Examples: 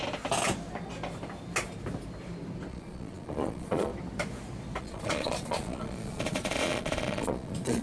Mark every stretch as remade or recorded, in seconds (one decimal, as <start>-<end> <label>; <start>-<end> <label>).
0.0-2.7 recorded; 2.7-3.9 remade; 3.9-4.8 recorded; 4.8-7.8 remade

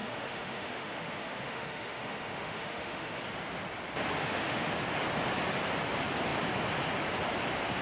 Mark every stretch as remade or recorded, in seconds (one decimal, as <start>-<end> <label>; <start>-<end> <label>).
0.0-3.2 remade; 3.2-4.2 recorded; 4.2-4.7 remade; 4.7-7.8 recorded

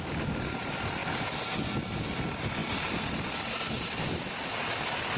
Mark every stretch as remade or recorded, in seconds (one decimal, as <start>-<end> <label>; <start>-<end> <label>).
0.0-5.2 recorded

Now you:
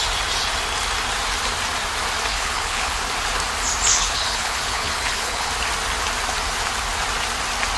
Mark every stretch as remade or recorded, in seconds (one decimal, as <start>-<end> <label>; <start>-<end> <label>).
0.0-2.3 recorded; 2.3-3.0 remade; 3.0-3.9 recorded; 3.9-5.5 remade; 5.5-7.8 recorded

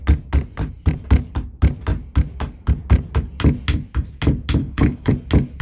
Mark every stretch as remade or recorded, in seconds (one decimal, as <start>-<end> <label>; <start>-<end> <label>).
0.0-4.6 recorded; 4.6-5.1 remade; 5.1-5.6 recorded

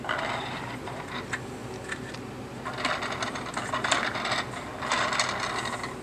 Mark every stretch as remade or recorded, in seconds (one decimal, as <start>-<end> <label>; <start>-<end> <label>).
0.0-6.0 recorded

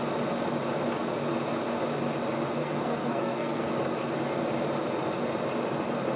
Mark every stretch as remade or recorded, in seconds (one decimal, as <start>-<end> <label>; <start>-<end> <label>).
0.0-2.6 recorded; 2.6-3.7 remade; 3.7-6.2 recorded